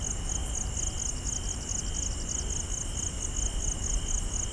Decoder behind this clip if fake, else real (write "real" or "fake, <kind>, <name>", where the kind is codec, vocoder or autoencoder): real